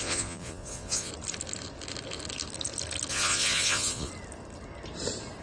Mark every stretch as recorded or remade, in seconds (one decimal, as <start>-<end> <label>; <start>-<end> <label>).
0.0-1.1 remade; 1.1-3.1 recorded; 3.1-4.1 remade; 4.1-5.4 recorded